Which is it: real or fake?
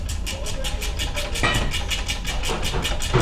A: real